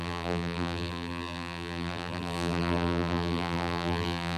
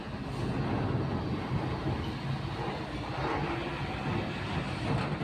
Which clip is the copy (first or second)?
first